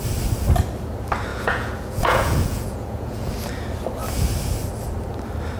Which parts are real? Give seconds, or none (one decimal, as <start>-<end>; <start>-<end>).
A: 0.0-1.3; 3.3-5.6

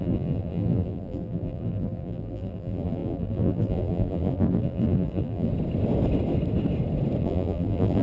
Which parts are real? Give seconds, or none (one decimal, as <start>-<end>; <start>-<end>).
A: 5.5-7.2

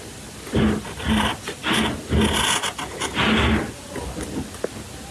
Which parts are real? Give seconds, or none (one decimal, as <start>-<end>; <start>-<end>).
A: 0.0-5.1

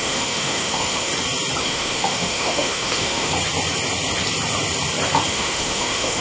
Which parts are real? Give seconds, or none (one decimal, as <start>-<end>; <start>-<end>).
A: 1.1-1.6; 3.3-5.3

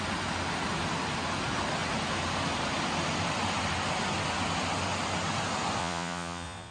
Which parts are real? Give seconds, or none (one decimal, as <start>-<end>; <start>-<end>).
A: 0.0-5.8